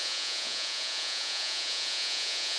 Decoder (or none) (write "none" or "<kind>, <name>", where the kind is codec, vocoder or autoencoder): vocoder, Vocos